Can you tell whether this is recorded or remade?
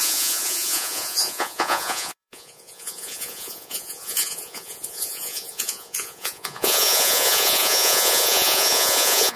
remade